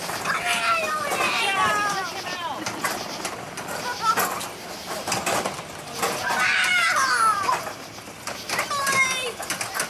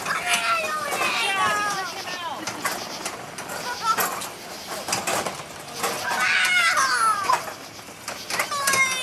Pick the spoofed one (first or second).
first